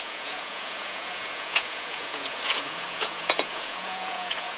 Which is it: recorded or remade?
remade